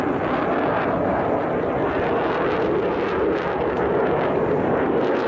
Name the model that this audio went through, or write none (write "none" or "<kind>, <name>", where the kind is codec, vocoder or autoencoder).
none